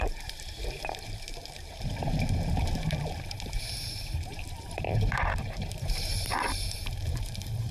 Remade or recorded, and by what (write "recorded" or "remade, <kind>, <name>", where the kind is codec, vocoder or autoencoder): remade, vocoder, BigVGAN v2